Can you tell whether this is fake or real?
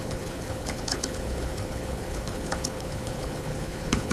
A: fake